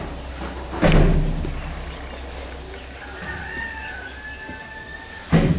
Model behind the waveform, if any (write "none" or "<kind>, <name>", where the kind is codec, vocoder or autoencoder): none